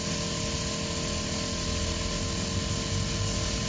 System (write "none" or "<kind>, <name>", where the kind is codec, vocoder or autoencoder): none